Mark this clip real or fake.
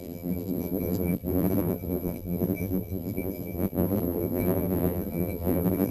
fake